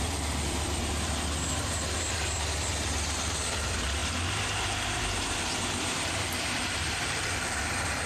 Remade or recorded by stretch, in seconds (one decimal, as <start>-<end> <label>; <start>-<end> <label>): 0.0-8.1 remade